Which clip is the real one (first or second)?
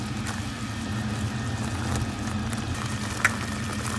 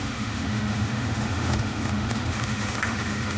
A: first